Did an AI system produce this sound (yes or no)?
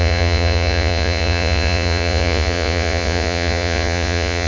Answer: yes